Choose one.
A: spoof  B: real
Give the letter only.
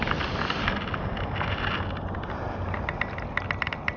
B